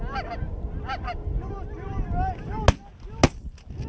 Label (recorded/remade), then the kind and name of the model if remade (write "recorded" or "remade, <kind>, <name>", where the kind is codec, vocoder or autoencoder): recorded